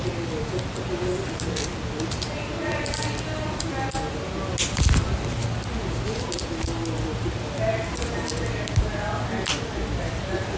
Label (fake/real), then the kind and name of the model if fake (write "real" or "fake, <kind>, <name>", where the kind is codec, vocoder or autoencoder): real